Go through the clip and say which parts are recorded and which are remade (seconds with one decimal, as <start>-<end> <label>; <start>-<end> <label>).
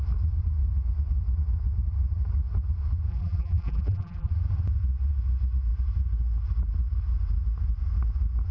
0.0-3.1 recorded; 3.1-4.3 remade; 4.3-8.5 recorded